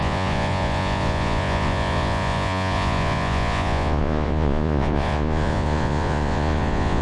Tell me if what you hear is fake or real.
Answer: fake